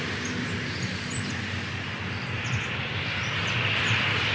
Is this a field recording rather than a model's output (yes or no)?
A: yes